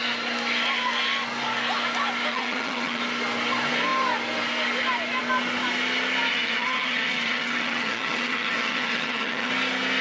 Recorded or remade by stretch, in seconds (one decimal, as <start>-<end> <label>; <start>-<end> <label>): 0.0-2.3 recorded; 2.3-3.0 remade; 3.0-6.3 recorded; 6.3-9.5 remade; 9.5-10.0 recorded